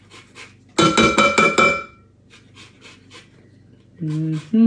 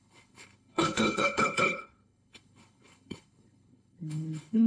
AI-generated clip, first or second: second